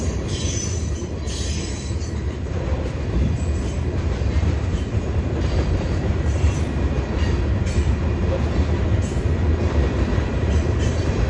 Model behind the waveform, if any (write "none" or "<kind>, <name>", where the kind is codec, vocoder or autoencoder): vocoder, BigVGAN v2